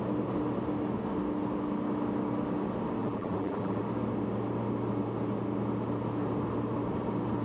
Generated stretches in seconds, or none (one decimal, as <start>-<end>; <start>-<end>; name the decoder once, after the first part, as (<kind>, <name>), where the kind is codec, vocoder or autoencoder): 3.0-3.8 (vocoder, BigVGAN v2)